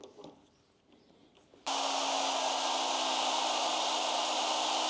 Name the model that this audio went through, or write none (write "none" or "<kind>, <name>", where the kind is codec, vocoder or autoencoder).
none